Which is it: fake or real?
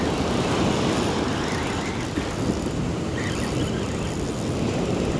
real